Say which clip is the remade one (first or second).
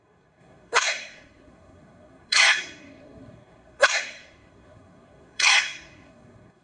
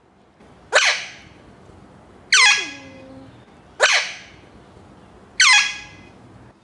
first